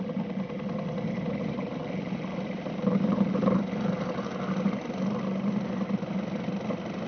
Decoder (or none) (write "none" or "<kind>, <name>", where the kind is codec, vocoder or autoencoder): none